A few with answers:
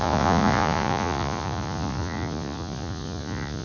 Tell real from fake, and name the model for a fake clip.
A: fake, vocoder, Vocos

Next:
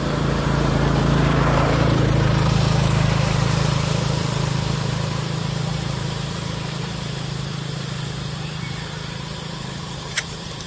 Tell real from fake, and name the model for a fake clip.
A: fake, vocoder, BigVGAN v2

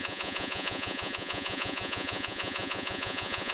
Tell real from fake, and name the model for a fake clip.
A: fake, vocoder, Vocos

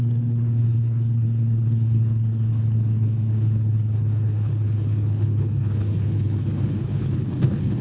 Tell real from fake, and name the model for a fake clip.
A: fake, codec, HILCodec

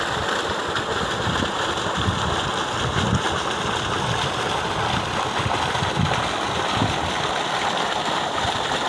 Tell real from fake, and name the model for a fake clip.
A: real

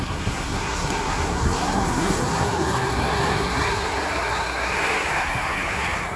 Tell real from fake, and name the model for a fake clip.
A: fake, codec, SNAC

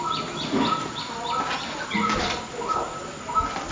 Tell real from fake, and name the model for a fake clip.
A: real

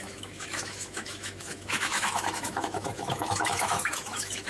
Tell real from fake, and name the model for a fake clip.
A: fake, autoencoder, DAC-VAE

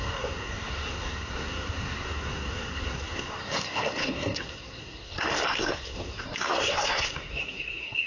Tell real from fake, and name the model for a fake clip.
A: fake, codec, SNAC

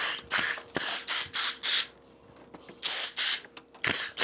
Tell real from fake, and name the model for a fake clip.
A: real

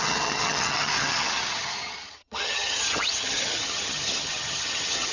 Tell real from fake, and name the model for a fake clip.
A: fake, vocoder, HiFi-GAN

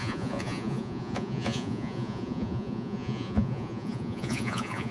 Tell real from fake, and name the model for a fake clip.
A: fake, vocoder, Vocos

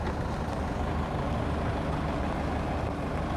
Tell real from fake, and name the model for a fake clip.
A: real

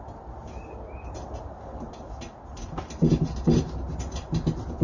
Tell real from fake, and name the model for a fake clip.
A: real